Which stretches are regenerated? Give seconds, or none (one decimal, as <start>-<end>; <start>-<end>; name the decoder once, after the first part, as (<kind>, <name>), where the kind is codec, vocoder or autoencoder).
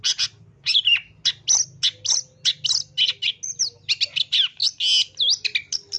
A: none